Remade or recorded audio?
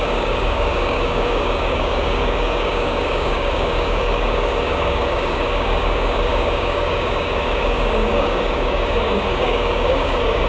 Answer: remade